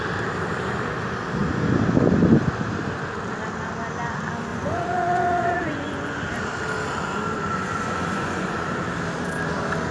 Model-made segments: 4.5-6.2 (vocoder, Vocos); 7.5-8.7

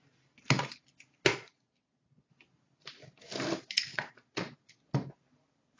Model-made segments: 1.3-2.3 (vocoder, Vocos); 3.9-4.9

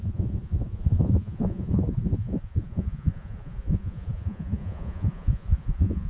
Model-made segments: 0.0-6.1 (vocoder, Vocos)

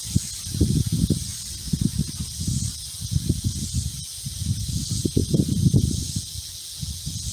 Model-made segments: 5.2-6.0 (vocoder, BigVGAN v2)